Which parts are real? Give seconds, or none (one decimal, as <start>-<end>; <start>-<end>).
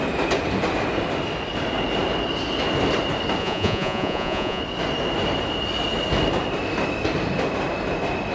0.0-3.4; 4.6-8.3